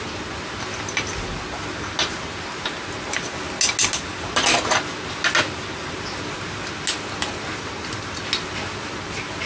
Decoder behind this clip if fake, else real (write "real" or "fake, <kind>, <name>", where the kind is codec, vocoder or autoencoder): real